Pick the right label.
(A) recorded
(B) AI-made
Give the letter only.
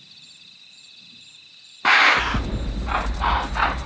B